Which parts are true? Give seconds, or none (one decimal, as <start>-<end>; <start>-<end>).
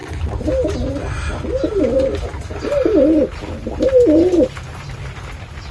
0.0-5.7